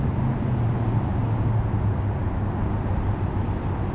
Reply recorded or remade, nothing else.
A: recorded